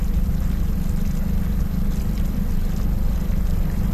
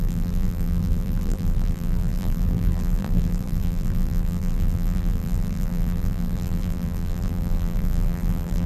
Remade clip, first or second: second